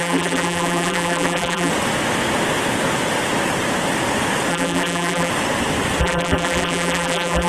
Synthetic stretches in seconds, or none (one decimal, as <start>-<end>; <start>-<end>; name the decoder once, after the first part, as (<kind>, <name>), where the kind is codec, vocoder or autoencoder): 0.0-1.7 (vocoder, BigVGAN v2); 4.5-5.3; 6.0-7.5